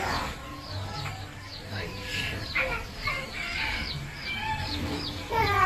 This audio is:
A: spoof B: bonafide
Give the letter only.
A